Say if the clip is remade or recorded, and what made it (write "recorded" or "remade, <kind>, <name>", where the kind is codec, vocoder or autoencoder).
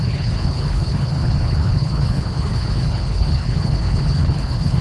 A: remade, codec, HILCodec